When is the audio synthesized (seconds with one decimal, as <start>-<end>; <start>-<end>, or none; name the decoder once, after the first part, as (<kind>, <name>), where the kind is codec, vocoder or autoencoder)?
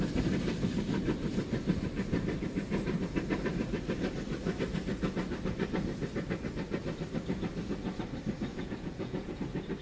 8.5-9.4 (vocoder, Vocos)